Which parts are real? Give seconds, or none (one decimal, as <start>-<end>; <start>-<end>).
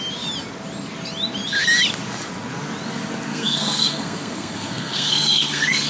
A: 0.0-3.3